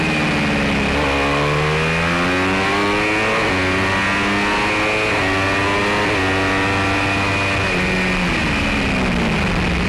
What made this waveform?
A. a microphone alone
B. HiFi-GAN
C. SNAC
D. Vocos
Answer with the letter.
A